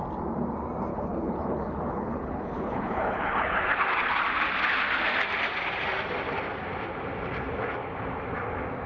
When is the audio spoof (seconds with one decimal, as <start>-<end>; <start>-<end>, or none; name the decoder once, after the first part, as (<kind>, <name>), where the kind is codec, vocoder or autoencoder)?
0.9-3.5 (codec, HILCodec)